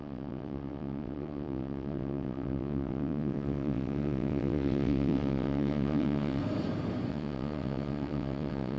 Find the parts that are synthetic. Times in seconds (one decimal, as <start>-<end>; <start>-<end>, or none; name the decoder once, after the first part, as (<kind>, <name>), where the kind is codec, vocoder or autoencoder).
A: 0.0-6.4 (vocoder, WaveNeXt); 7.1-8.8